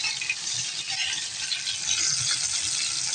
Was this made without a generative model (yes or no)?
yes